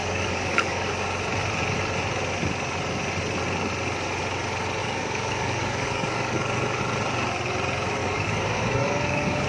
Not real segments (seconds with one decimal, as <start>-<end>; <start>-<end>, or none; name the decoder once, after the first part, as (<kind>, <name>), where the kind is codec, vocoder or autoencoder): 0.0-0.9 (codec, DAC); 4.8-6.8; 8.0-9.5